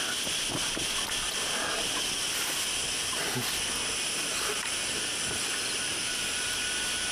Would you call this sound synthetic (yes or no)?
no